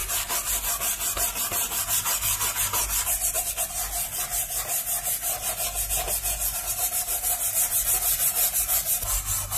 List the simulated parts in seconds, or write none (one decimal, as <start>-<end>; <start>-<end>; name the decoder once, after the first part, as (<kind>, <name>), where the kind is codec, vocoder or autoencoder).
0.0-0.7 (vocoder, BigVGAN v2)